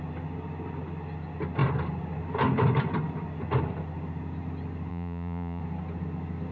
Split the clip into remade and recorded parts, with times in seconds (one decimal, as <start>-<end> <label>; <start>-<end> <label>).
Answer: 0.0-4.9 recorded; 4.9-5.6 remade; 5.6-6.5 recorded